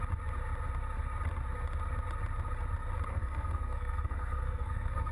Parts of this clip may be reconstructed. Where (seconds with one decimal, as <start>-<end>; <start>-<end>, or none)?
3.1-5.1